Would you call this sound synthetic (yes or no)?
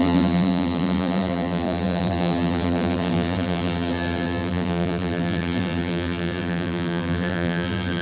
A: yes